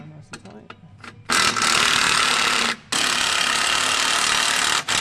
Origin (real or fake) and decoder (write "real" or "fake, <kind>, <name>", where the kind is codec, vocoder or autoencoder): real